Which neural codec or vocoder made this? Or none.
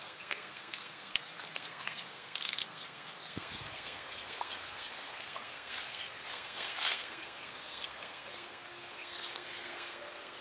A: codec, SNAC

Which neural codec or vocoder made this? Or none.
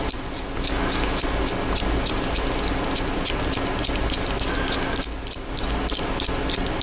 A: none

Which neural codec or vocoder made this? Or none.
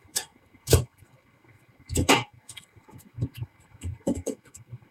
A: codec, SNAC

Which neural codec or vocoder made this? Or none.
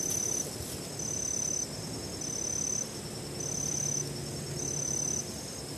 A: none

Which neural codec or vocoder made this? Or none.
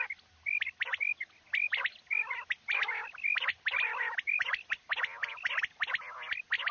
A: none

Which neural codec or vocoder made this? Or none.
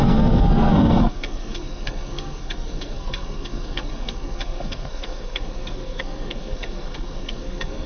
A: codec, SNAC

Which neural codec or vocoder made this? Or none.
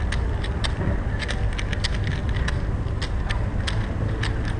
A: none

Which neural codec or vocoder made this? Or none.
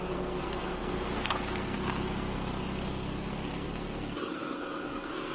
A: codec, SNAC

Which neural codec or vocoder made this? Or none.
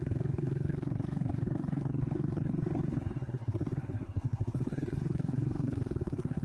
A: codec, SNAC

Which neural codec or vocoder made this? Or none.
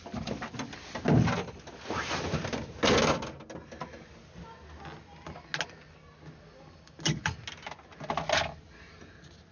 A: none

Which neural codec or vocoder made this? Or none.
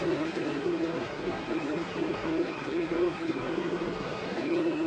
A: codec, SNAC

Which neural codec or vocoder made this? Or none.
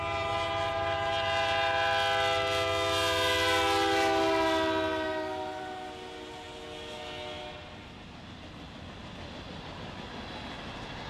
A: none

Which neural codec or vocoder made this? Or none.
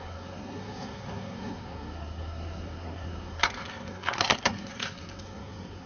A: codec, SNAC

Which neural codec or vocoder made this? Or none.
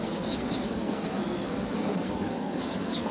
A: codec, SNAC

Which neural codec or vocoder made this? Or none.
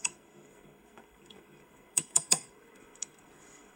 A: codec, SNAC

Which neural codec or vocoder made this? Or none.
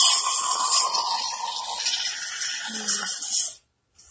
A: none